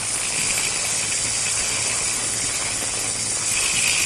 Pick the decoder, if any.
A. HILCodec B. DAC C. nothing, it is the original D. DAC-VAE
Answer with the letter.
A